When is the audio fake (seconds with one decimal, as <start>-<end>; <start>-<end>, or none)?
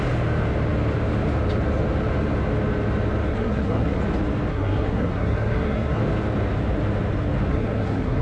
3.3-4.0; 4.5-6.0; 7.5-8.2